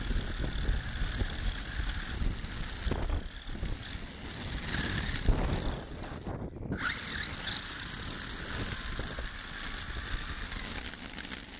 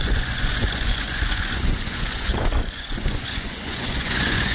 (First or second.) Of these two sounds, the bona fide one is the first